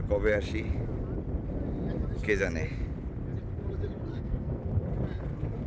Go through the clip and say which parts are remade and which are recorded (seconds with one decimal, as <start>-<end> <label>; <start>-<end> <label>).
0.0-4.1 recorded; 4.1-4.6 remade; 4.6-5.7 recorded